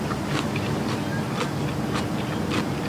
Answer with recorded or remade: recorded